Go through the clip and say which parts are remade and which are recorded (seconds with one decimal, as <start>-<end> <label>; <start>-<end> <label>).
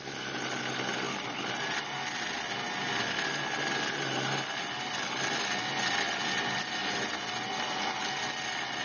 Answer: 0.0-8.8 recorded